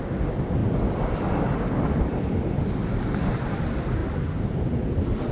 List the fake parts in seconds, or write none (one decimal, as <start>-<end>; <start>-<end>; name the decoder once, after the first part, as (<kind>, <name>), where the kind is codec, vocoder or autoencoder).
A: none